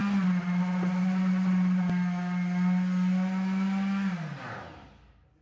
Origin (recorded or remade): recorded